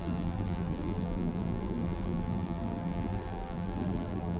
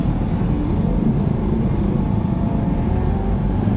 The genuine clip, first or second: second